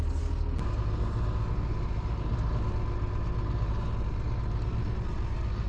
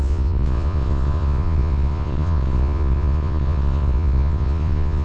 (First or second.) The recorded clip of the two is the first